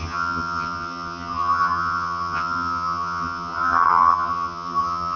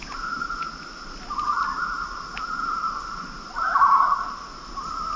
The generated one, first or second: first